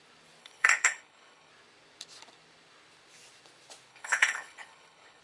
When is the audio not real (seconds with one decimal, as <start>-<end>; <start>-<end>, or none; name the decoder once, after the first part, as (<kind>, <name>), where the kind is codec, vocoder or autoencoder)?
0.4-1.5 (codec, HILCodec); 3.9-5.2